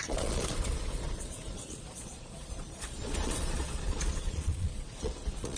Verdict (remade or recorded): remade